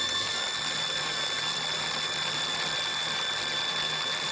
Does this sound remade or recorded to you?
recorded